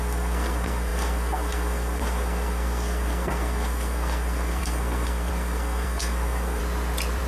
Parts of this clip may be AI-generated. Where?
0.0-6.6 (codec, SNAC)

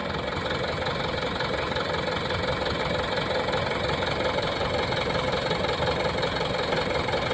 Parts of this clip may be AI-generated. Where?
none

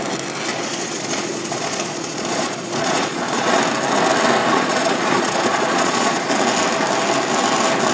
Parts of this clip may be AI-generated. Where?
0.5-3.6 (vocoder, Vocos); 4.4-6.3

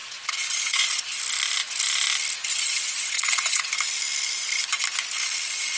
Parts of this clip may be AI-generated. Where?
0.0-1.2 (vocoder, Vocos); 2.5-3.7

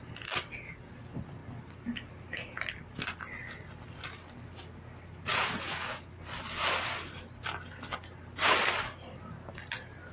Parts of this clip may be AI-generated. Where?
5.3-6.1 (vocoder, Vocos)

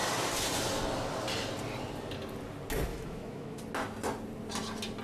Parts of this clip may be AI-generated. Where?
2.9-3.6 (autoencoder, DAC-VAE)

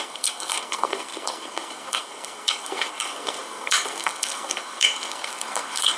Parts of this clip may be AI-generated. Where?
0.0-6.0 (codec, SNAC)

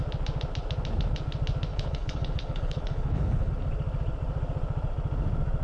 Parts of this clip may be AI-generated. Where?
1.7-3.5 (codec, HILCodec)